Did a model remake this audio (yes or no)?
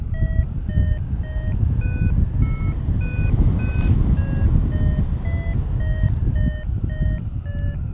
no